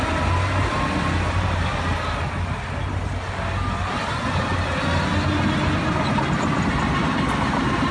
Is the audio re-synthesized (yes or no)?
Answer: no